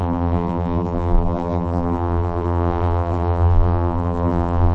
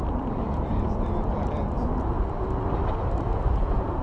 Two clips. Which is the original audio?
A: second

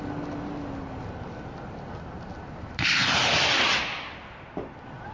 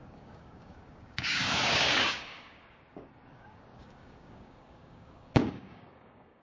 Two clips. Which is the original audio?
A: first